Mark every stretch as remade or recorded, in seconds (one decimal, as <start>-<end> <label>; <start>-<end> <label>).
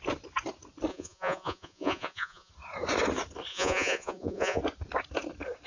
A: 0.0-0.9 recorded; 0.9-2.5 remade; 2.5-3.5 recorded; 3.5-4.6 remade; 4.6-5.7 recorded